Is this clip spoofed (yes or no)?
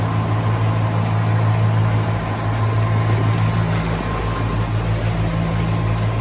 no